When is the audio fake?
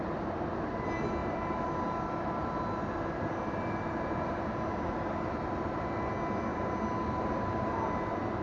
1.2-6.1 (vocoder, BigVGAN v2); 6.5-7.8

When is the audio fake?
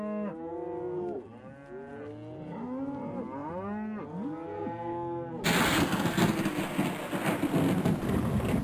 none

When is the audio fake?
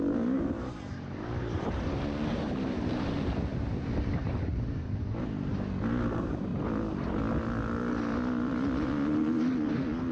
0.0-6.5 (vocoder, BigVGAN v2)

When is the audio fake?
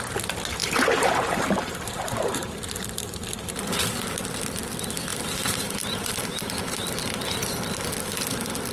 0.6-2.5 (vocoder, BigVGAN v2); 5.1-6.1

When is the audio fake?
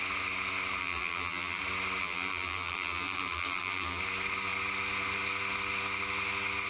0.8-1.6 (vocoder, BigVGAN v2); 2.0-4.0